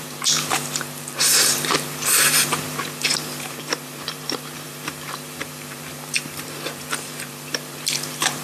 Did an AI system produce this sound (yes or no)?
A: yes